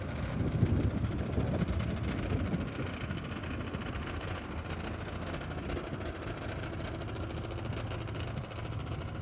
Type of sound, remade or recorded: recorded